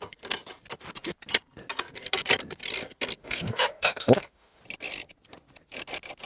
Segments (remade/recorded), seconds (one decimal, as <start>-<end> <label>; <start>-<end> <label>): 0.0-3.2 recorded; 3.2-4.6 remade; 4.6-6.3 recorded